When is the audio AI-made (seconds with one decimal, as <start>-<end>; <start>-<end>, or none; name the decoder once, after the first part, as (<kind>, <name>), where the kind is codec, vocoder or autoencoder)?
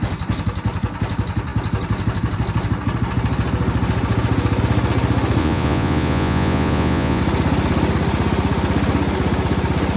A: 5.4-7.2 (vocoder, Vocos)